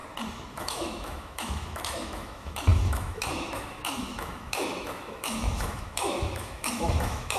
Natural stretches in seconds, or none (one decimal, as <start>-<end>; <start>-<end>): 0.0-0.5